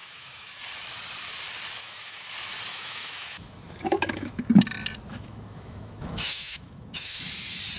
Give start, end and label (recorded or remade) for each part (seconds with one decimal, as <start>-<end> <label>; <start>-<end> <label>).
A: 0.0-0.6 remade; 0.6-1.8 recorded; 1.8-2.3 remade; 2.3-2.7 recorded; 2.7-4.5 remade; 4.5-5.1 recorded; 5.1-7.2 remade; 7.2-7.8 recorded

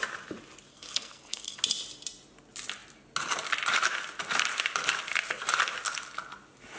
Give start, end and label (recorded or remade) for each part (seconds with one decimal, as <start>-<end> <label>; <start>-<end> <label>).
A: 0.0-0.7 recorded; 0.7-1.6 remade; 1.6-6.8 recorded

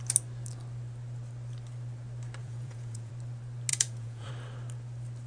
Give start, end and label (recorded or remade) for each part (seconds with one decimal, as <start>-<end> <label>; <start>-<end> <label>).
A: 0.0-2.4 recorded; 2.4-3.1 remade; 3.1-3.7 recorded; 3.7-4.3 remade; 4.3-5.3 recorded

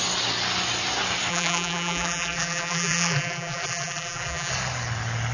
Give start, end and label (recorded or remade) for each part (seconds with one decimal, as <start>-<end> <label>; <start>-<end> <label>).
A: 0.0-1.3 recorded; 1.3-4.5 remade; 4.5-5.3 recorded